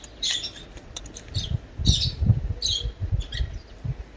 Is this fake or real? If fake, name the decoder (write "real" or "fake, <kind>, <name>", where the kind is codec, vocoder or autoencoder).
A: real